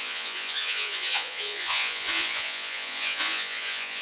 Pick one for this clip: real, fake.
fake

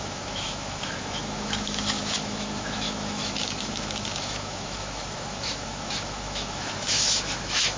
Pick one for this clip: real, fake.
fake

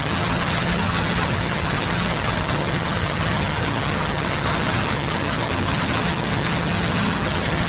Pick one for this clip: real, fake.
fake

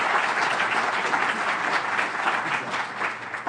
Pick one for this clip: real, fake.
real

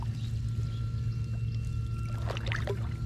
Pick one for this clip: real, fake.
real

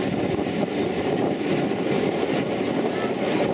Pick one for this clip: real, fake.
real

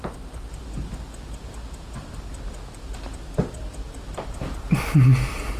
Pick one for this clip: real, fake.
real